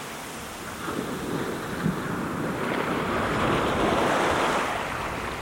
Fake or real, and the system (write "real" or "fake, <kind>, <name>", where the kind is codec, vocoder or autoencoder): real